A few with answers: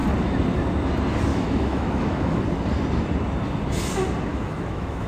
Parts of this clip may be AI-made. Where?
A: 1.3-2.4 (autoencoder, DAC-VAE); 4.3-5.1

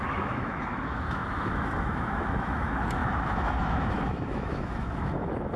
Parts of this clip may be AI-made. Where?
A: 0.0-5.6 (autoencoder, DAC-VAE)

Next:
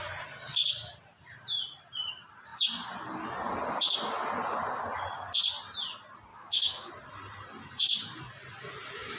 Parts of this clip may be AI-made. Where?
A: 6.3-6.9 (autoencoder, DAC-VAE)

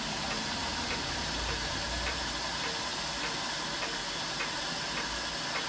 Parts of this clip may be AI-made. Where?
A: 0.6-2.4 (vocoder, BigVGAN v2)

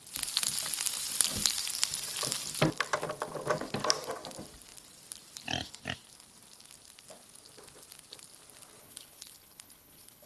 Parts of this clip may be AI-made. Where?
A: 8.8-10.3 (codec, HILCodec)

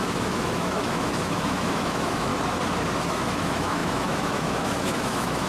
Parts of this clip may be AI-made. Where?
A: 0.0-2.3 (autoencoder, DAC-VAE); 3.1-5.5

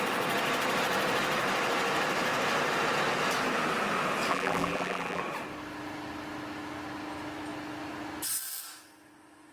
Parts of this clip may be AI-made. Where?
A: 4.3-5.2 (vocoder, BigVGAN v2)

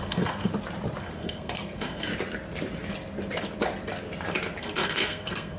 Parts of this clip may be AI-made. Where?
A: 0.0-0.5 (codec, SNAC); 1.0-2.1; 4.6-5.6